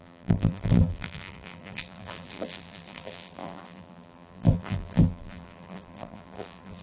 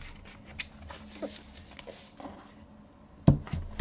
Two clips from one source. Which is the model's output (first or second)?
first